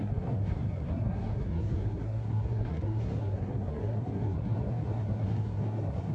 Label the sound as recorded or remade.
remade